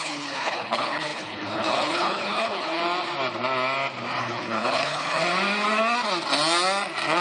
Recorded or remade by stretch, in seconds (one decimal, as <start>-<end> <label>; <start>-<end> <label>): 0.0-2.8 remade; 2.8-4.2 recorded; 4.2-5.2 remade; 5.2-7.2 recorded